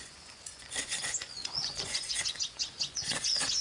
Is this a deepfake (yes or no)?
yes